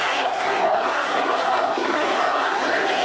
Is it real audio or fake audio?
fake